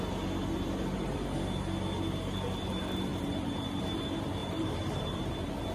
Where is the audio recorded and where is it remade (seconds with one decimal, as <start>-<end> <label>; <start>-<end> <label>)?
0.0-3.1 recorded; 3.1-3.8 remade; 3.8-4.4 recorded; 4.4-5.3 remade; 5.3-5.7 recorded